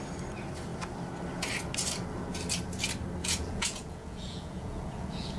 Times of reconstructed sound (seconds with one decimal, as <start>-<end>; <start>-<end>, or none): 3.2-5.4